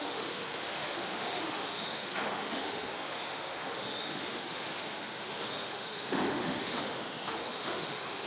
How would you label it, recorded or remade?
remade